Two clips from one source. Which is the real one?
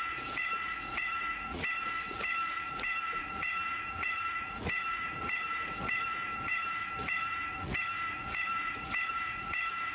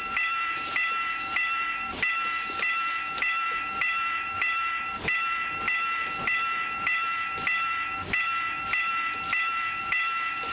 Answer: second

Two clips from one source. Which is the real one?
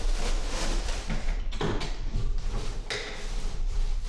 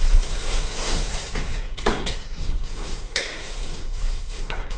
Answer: first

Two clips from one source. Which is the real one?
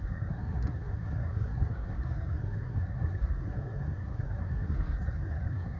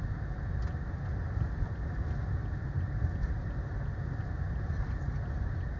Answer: second